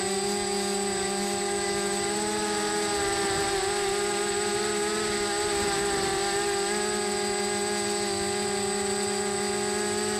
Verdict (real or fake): real